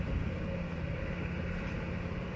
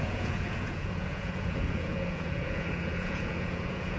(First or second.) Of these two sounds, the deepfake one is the second